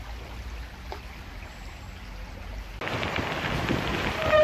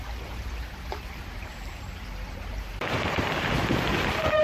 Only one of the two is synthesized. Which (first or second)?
second